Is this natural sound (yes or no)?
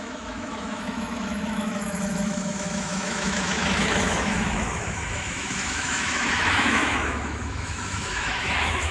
no